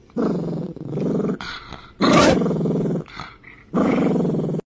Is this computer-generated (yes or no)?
no